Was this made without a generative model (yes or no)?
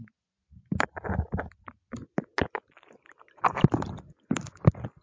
yes